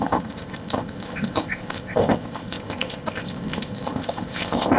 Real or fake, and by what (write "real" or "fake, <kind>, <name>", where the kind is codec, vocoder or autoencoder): fake, codec, ZipCodec